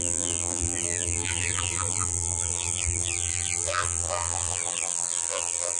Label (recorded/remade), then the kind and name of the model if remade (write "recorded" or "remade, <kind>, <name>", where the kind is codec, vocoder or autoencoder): remade, vocoder, BigVGAN v2